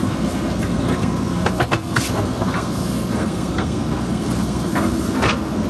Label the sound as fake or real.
fake